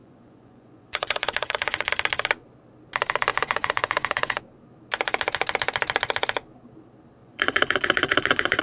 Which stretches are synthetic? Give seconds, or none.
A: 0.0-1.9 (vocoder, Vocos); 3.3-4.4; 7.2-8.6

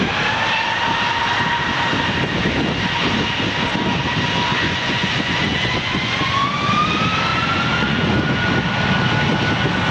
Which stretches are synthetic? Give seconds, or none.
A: 4.5-6.7 (vocoder, Vocos); 7.3-8.5

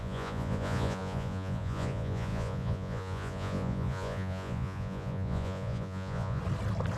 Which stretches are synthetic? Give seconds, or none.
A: 0.0-6.4 (vocoder, Vocos)

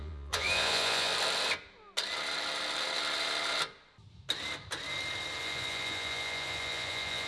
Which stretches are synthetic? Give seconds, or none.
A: 0.0-1.1 (vocoder, Vocos); 5.4-7.3

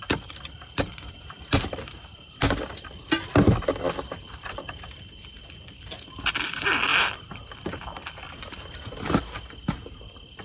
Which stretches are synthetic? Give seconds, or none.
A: none

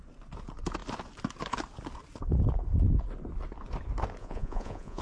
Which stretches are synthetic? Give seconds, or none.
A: 4.2-5.0 (vocoder, Vocos)

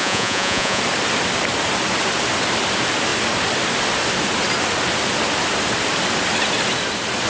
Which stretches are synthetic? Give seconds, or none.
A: 0.0-0.8 (vocoder, Vocos)